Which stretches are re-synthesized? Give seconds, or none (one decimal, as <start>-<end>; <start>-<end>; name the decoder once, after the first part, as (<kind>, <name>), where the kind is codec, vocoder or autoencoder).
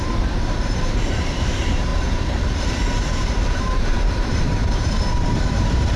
0.0-1.9 (vocoder, BigVGAN v2); 2.7-6.0